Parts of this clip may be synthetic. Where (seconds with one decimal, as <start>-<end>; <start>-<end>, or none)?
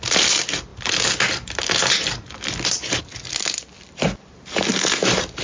none